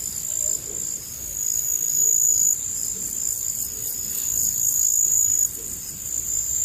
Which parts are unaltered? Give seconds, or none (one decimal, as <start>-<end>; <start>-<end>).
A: 0.0-2.0; 6.0-6.6